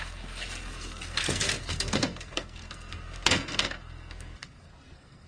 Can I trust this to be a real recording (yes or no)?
no